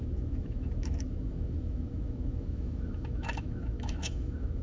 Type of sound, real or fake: fake